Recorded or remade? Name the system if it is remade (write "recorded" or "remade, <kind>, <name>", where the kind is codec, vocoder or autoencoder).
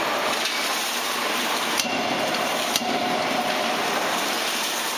remade, vocoder, BigVGAN v2